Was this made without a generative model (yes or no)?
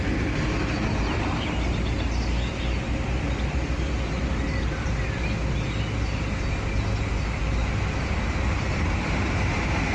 yes